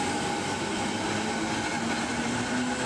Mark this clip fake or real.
real